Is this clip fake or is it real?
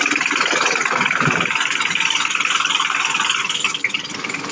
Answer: fake